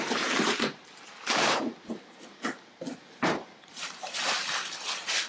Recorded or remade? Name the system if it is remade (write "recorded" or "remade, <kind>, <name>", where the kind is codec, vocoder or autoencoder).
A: remade, vocoder, BigVGAN v2